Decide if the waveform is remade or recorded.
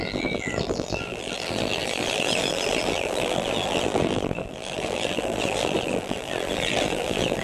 remade